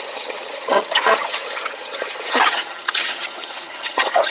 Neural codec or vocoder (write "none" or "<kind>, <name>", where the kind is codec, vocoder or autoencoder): vocoder, HiFi-GAN